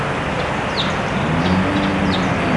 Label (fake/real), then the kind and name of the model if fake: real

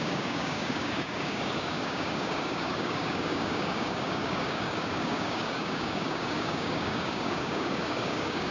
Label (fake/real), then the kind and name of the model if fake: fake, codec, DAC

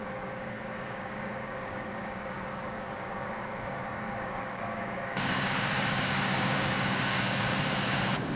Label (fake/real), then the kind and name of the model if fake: fake, codec, DAC